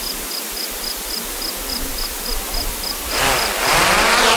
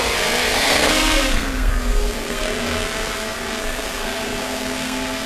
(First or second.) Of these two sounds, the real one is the first